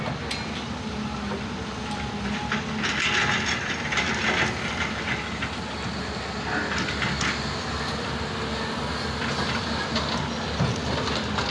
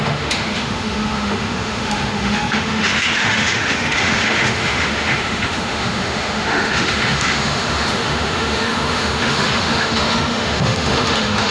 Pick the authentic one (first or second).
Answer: first